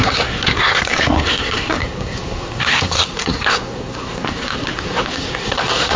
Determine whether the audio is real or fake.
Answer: fake